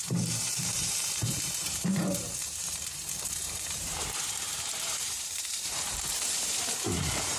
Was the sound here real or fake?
fake